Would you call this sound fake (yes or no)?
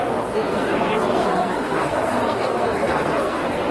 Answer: yes